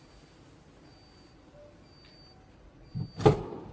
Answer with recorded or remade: recorded